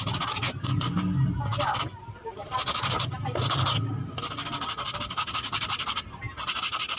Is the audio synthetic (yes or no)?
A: no